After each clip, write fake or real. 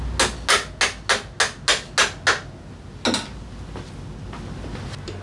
real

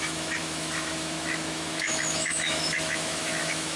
fake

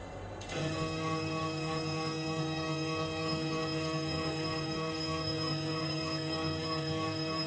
fake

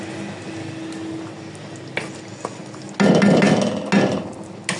real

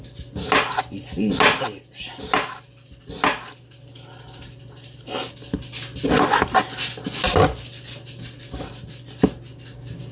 real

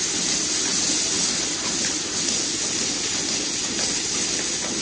real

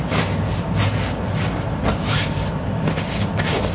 real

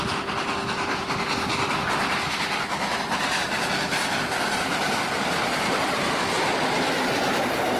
real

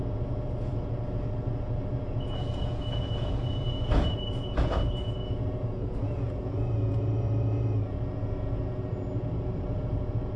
fake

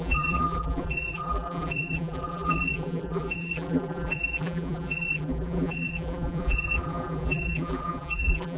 fake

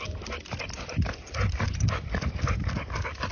real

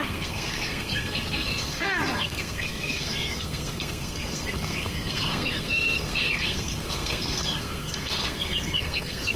fake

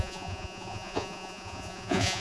fake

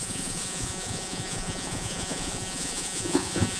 fake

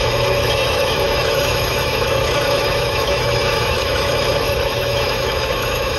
fake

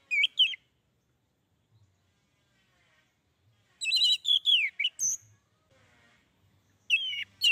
real